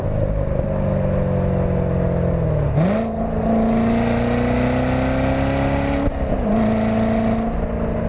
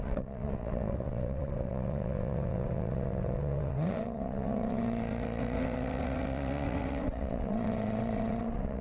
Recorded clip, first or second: first